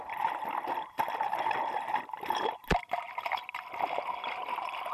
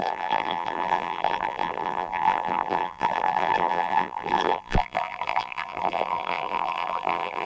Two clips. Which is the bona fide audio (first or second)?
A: first